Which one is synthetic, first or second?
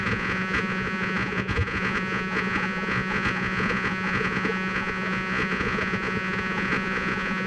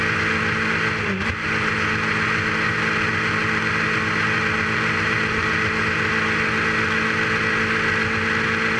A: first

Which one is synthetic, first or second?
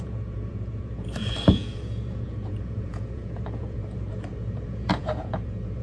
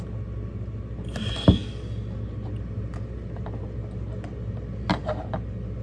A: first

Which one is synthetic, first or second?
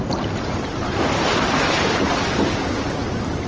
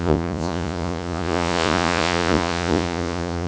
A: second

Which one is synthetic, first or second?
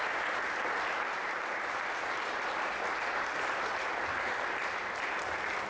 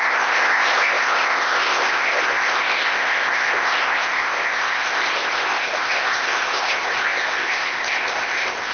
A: second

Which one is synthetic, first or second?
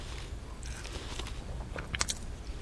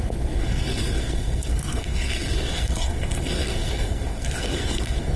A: second